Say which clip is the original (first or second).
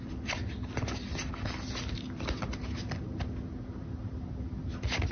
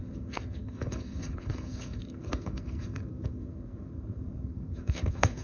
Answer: first